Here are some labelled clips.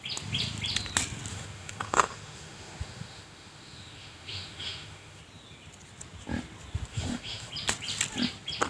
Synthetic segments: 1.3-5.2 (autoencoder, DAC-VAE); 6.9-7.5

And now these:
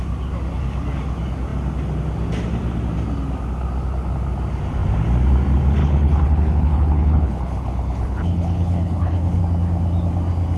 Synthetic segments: 5.8-9.4 (codec, HILCodec)

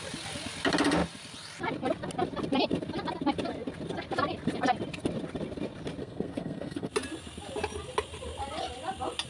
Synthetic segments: 6.0-6.9 (codec, SNAC)

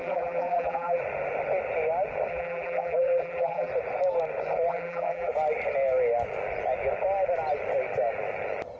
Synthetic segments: 0.0-1.0 (vocoder, BigVGAN v2); 2.3-3.7; 4.7-5.3

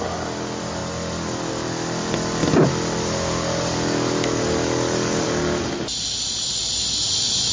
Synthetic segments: none